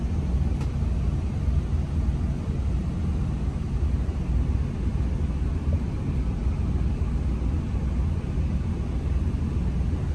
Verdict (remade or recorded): recorded